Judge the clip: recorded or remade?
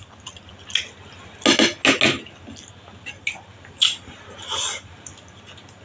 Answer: recorded